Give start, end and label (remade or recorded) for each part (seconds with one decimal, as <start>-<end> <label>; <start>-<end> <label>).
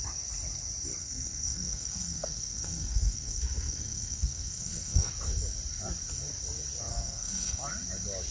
0.0-1.0 recorded; 1.0-5.1 remade; 5.1-6.9 recorded; 6.9-7.6 remade; 7.6-8.3 recorded